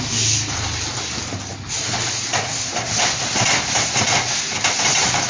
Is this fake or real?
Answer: real